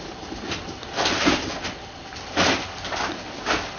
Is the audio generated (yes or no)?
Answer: no